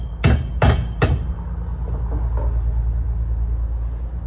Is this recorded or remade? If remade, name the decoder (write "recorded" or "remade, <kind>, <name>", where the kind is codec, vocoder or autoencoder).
recorded